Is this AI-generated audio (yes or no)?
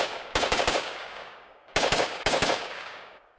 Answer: yes